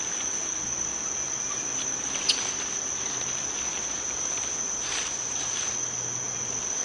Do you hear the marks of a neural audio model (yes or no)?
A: no